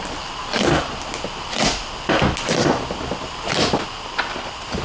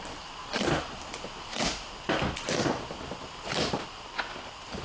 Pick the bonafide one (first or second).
first